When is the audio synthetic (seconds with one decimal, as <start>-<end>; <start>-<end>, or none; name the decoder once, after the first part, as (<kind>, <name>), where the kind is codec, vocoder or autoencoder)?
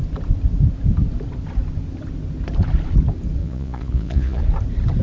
3.4-4.4 (vocoder, Vocos)